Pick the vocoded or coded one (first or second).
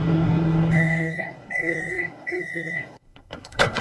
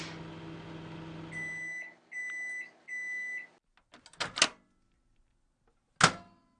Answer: first